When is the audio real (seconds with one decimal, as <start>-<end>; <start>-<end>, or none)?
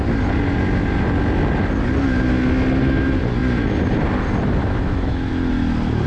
0.0-4.6; 5.3-6.1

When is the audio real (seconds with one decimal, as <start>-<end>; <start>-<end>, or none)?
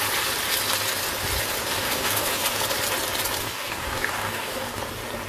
0.0-1.6; 2.6-3.4; 4.8-5.3